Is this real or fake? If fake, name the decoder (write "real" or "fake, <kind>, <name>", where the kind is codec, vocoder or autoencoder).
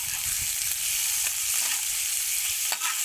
real